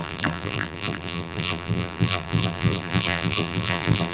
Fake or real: fake